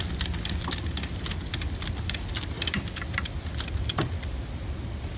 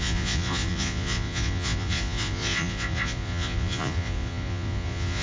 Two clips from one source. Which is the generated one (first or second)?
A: second